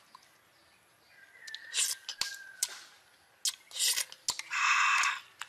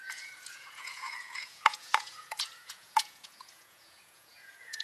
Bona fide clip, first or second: first